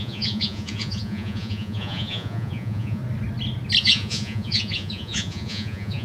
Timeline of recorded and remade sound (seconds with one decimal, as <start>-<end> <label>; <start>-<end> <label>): 0.0-3.0 remade; 3.0-3.8 recorded; 3.8-6.0 remade

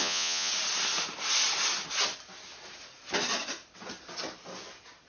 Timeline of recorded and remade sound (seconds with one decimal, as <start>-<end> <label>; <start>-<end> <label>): 0.0-0.5 remade; 0.5-5.1 recorded

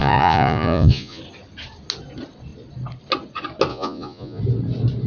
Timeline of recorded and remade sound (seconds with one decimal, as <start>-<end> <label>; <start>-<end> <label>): 0.0-1.2 remade; 1.2-3.7 recorded; 3.7-4.4 remade; 4.4-5.1 recorded

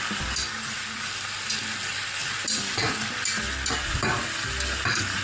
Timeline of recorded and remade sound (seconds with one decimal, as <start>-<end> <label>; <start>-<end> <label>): 0.0-5.2 recorded

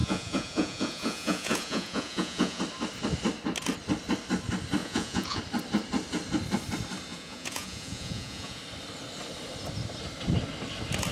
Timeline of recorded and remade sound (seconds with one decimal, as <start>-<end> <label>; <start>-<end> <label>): 0.0-2.6 remade; 2.6-4.8 recorded; 4.8-5.4 remade; 5.4-7.1 recorded; 7.1-8.6 remade; 8.6-11.1 recorded

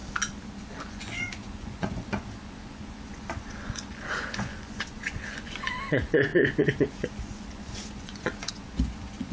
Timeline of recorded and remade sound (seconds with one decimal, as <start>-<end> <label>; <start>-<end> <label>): 0.0-0.7 recorded; 0.7-9.3 remade